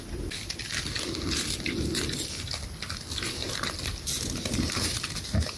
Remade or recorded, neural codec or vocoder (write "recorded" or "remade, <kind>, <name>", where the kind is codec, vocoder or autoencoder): recorded